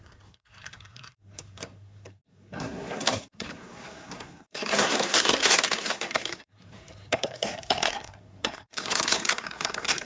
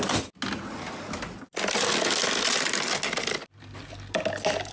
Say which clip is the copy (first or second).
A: first